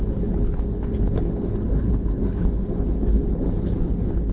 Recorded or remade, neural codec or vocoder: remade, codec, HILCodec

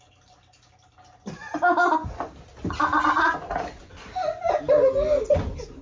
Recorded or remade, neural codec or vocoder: recorded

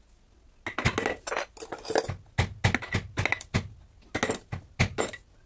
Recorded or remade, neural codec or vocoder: recorded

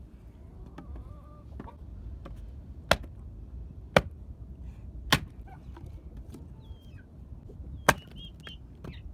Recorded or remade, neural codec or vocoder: recorded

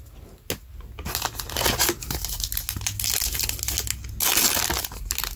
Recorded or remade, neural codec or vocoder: recorded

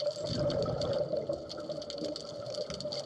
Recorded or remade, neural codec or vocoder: recorded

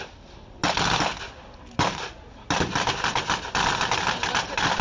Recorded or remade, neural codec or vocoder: recorded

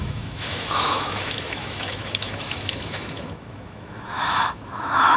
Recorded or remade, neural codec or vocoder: remade, autoencoder, DAC-VAE